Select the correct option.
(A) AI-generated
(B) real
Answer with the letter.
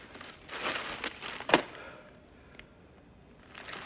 B